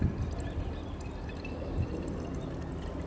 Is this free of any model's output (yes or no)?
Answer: yes